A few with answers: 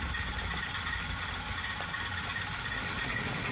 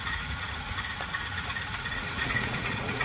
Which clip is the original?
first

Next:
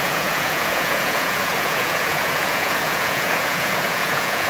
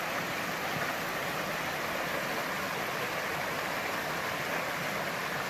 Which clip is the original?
second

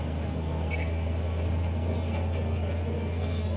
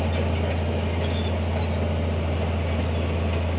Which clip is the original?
second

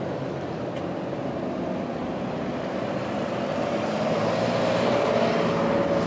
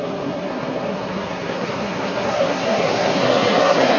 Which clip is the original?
first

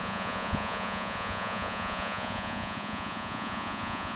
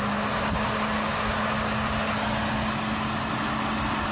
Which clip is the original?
second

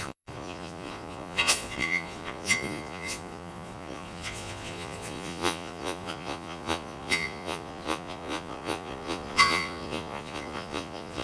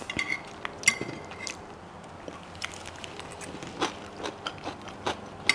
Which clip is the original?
second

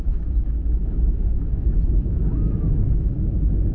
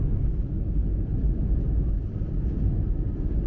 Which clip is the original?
second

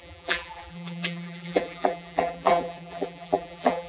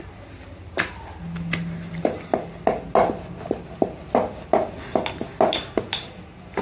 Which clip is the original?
second